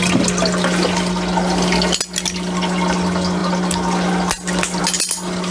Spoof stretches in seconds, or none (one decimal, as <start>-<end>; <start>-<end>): none